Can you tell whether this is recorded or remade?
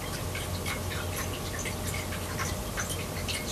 recorded